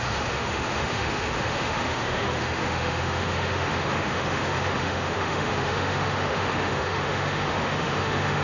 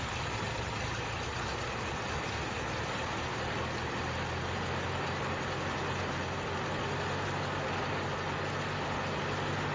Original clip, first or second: second